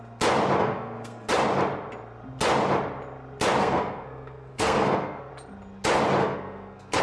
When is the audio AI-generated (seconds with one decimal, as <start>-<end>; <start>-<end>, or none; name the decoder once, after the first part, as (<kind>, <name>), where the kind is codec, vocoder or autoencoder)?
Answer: 0.6-1.3 (codec, SNAC); 3.6-5.3; 6.2-7.0